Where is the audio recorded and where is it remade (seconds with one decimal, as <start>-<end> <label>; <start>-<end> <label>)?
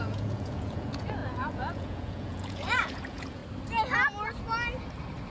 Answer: 0.0-3.4 remade; 3.4-5.3 recorded